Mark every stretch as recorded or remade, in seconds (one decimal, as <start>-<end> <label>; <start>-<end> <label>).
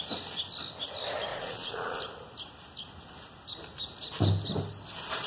0.0-1.3 recorded; 1.3-2.0 remade; 2.0-5.3 recorded